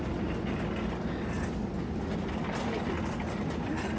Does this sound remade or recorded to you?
recorded